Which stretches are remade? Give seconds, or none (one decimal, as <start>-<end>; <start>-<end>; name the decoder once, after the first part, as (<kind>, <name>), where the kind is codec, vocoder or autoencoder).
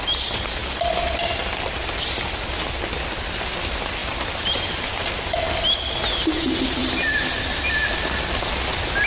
4.0-5.2 (vocoder, BigVGAN v2)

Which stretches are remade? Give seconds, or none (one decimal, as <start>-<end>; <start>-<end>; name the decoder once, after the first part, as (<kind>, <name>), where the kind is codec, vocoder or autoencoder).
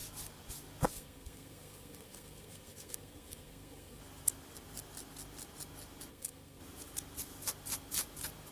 0.9-4.0 (codec, SNAC); 6.1-6.6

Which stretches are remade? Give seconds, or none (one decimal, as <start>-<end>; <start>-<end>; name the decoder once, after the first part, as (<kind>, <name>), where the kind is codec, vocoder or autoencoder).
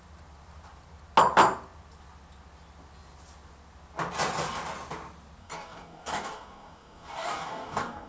5.4-8.1 (codec, DAC)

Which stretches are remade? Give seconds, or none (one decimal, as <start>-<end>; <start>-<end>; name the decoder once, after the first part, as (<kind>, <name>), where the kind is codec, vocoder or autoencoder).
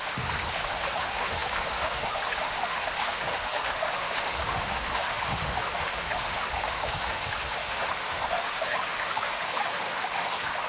0.0-10.7 (autoencoder, DAC-VAE)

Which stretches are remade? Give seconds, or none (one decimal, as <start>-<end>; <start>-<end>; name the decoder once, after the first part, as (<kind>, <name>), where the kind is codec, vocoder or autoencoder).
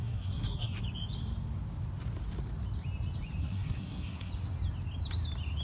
0.0-0.8 (codec, SNAC); 3.4-4.3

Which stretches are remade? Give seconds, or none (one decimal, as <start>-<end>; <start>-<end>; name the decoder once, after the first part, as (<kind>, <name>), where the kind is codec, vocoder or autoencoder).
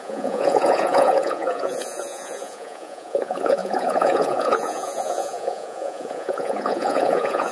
0.0-7.5 (vocoder, Vocos)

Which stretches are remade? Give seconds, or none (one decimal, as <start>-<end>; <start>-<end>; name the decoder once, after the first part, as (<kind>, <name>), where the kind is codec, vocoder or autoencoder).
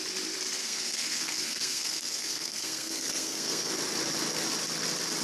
0.6-3.7 (codec, SNAC)